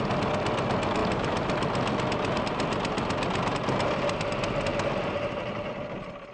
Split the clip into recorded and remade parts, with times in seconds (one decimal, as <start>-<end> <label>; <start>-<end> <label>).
0.0-6.3 recorded